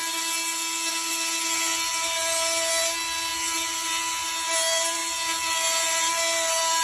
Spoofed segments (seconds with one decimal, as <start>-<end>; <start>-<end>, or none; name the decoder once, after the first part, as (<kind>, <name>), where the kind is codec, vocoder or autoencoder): none